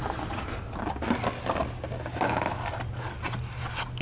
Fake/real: real